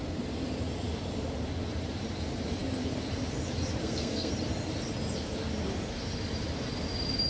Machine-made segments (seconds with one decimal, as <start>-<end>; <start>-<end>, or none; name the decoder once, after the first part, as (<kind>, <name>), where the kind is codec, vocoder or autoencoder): 3.8-4.3 (codec, SNAC)

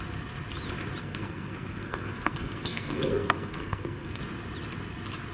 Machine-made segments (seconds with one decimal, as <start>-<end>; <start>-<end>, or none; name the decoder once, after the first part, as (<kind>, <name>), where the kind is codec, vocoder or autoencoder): 1.0-4.2 (codec, SNAC)

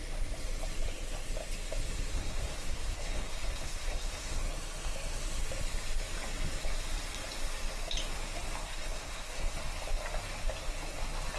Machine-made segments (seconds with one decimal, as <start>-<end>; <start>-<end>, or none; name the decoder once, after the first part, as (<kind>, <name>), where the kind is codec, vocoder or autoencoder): 2.1-4.4 (codec, SNAC); 8.6-9.6

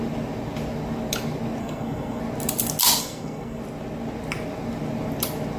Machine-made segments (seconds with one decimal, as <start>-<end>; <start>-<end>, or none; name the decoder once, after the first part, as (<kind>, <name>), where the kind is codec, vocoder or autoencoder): 1.6-2.2 (codec, SNAC); 3.0-3.6

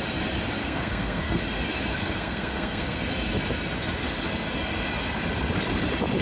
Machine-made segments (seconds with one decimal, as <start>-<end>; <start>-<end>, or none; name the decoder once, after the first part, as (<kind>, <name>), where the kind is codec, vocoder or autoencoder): 0.6-1.4 (codec, SNAC); 1.9-3.1

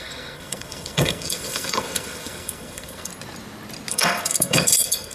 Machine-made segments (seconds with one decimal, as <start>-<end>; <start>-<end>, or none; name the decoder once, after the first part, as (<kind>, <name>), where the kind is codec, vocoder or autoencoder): 0.0-3.1 (codec, SNAC); 3.9-5.1